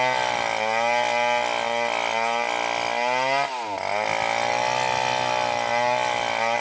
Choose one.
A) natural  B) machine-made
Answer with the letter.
A